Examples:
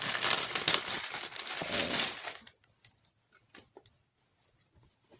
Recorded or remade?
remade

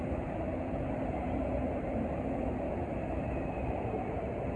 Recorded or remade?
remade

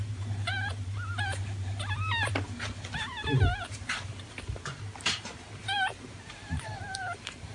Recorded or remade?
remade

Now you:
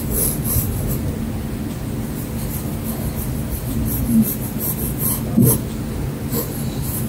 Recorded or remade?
recorded